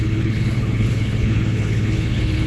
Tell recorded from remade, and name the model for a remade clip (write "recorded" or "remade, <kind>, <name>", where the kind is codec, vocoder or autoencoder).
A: remade, codec, HILCodec